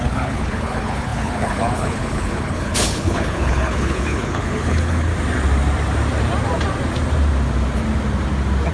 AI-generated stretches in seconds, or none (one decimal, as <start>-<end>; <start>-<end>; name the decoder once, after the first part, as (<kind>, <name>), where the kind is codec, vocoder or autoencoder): 0.0-5.1 (codec, HILCodec)